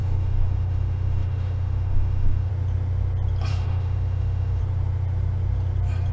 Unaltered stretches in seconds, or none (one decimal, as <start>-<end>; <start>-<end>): 2.5-3.5; 4.6-6.1